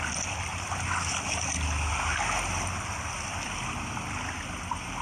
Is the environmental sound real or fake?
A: real